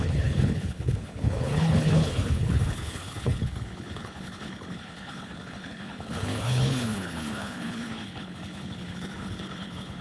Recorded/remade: remade